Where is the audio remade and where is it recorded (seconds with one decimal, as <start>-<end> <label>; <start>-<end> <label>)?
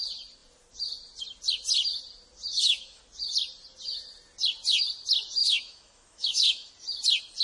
0.0-2.5 recorded; 2.5-3.0 remade; 3.0-5.4 recorded; 5.4-6.7 remade; 6.7-7.4 recorded